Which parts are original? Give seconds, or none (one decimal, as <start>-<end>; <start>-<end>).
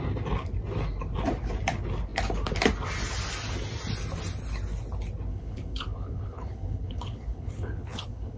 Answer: 0.0-5.3